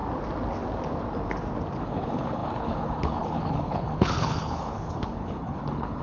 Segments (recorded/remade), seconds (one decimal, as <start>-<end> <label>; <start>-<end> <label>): 0.0-1.8 recorded; 1.8-6.0 remade